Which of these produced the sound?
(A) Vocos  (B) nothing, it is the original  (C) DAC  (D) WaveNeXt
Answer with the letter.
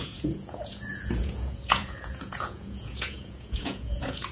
A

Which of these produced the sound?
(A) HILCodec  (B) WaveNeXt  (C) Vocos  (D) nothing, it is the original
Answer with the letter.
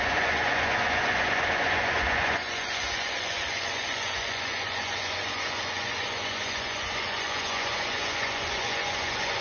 C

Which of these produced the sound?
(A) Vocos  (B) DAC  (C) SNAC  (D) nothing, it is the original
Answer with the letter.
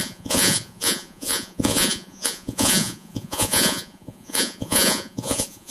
A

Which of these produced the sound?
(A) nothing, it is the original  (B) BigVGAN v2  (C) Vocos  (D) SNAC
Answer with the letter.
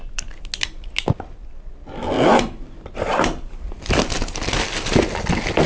A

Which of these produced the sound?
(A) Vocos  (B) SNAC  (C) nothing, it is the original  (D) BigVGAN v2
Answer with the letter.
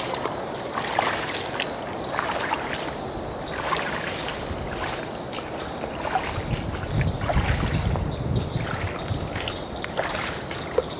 C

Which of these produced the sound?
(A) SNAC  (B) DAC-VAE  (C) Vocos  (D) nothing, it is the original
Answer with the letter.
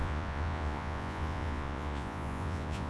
C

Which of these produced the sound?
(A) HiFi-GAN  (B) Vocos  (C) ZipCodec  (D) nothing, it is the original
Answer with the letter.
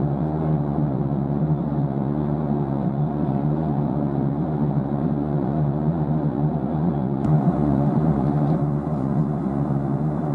B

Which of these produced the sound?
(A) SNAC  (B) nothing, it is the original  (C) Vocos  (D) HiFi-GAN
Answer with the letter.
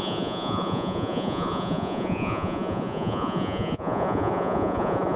C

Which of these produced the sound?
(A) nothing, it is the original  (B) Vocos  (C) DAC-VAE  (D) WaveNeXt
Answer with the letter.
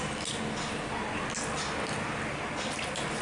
A